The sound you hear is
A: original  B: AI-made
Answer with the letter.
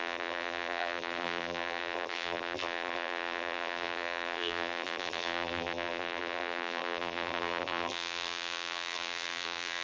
B